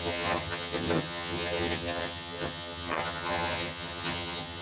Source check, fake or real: fake